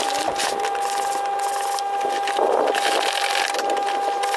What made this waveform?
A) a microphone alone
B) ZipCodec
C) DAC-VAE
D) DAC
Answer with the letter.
A